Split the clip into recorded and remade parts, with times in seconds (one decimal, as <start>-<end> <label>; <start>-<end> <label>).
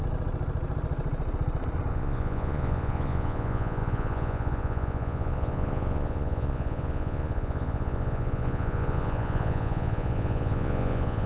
0.0-1.9 recorded; 1.9-11.3 remade